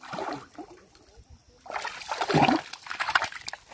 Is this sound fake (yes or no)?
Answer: no